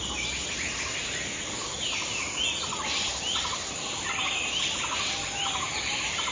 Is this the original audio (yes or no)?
yes